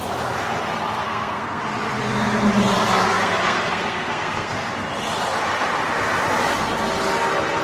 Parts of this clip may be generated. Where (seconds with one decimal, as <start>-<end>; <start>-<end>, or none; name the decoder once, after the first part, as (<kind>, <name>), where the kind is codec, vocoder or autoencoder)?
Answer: 1.0-1.6 (codec, SNAC); 3.1-4.7

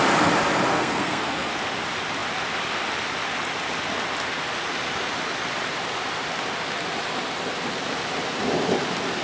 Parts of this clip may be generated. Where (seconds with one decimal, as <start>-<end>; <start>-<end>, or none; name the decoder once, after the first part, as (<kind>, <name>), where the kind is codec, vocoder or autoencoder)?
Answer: 0.7-1.5 (codec, SNAC)